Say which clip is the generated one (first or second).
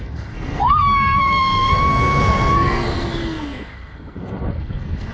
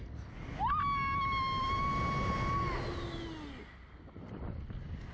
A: first